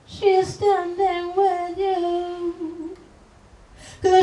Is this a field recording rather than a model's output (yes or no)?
yes